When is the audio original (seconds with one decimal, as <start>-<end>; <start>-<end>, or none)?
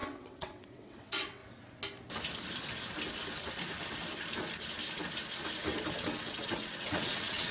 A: 1.4-5.9